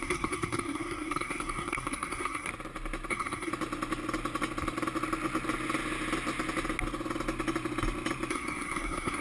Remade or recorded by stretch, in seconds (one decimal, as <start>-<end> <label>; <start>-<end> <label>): 0.0-2.5 remade; 2.5-3.1 recorded; 3.1-3.5 remade; 3.5-8.3 recorded; 8.3-9.2 remade